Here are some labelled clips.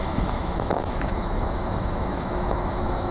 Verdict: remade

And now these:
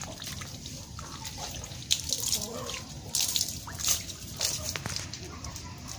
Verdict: recorded